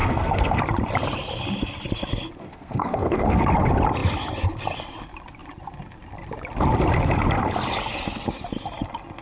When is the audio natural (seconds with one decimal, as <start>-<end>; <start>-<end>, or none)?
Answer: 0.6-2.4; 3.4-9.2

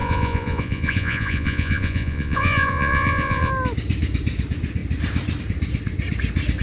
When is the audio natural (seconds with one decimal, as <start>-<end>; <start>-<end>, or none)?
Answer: 3.5-6.6

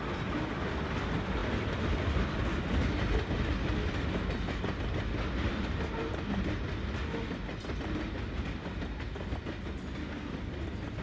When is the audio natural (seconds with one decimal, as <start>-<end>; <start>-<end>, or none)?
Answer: 0.0-11.0